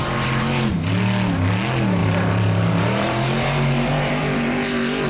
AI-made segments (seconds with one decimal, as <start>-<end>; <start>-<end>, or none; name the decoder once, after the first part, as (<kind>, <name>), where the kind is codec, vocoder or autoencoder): 0.0-0.9 (vocoder, BigVGAN v2); 2.0-5.1